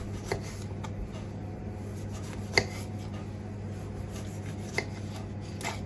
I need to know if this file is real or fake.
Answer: real